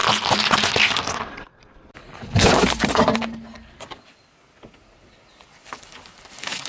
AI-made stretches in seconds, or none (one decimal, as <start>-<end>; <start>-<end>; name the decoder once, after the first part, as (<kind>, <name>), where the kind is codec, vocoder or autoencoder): 2.0-2.5 (codec, HILCodec)